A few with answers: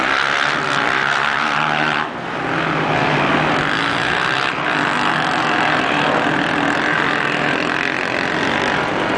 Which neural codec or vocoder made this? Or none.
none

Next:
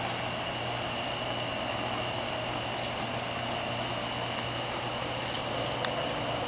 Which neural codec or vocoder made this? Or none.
none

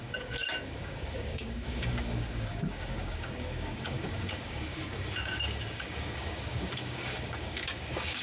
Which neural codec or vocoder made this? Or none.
codec, DAC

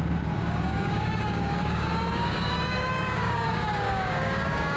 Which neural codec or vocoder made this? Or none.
codec, DAC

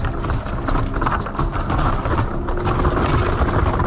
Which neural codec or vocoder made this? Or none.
none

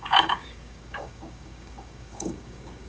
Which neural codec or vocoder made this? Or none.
codec, DAC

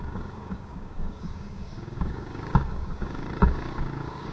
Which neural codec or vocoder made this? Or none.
codec, DAC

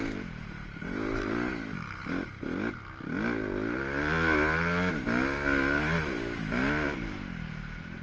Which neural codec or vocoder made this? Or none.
none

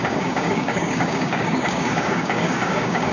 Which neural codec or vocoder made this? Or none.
codec, DAC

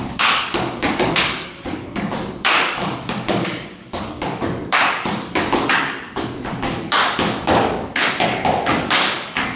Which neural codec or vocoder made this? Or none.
codec, DAC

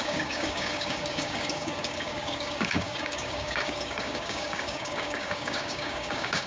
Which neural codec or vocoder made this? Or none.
codec, DAC